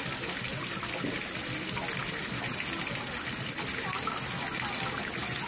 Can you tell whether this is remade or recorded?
recorded